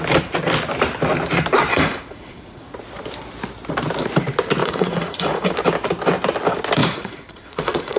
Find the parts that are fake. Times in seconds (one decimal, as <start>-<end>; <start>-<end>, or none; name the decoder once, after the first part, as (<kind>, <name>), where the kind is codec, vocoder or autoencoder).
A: 1.7-2.7 (vocoder, Vocos); 4.6-5.5; 6.8-8.0